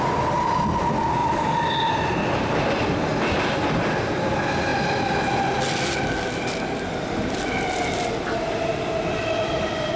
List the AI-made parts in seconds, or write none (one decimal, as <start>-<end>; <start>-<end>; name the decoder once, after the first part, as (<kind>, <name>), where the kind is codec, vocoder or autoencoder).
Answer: none